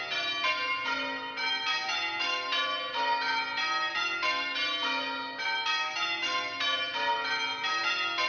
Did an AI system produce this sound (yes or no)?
no